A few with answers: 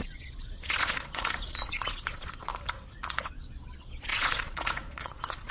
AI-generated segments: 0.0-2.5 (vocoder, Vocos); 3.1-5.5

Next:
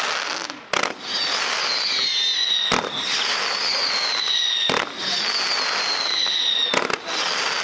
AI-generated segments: none

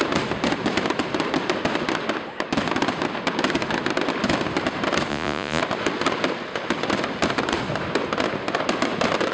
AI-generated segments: 5.1-5.6 (vocoder, Vocos)

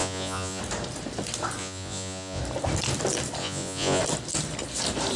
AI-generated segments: 0.0-0.6 (vocoder, Vocos); 1.6-2.4; 3.4-4.0